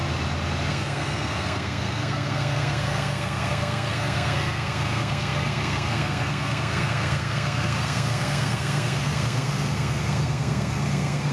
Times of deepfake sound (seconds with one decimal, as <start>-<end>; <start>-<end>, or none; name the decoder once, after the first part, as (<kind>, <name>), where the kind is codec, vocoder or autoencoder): 0.7-11.3 (codec, SNAC)